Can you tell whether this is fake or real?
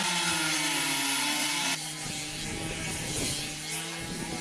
real